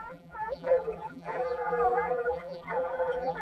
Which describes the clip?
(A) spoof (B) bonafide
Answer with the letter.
A